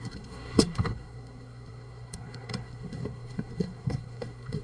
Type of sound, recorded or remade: remade